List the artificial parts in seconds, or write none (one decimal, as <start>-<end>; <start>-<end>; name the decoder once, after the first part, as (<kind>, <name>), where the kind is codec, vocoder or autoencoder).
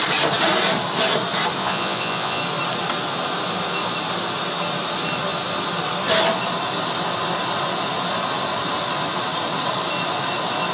1.6-2.4 (vocoder, Vocos)